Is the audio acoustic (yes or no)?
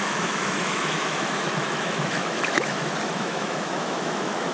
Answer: no